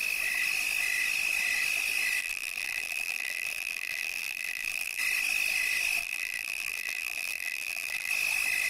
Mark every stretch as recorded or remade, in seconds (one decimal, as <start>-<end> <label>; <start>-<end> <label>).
0.0-2.2 recorded; 2.2-5.0 remade; 5.0-6.0 recorded; 6.0-8.1 remade; 8.1-8.7 recorded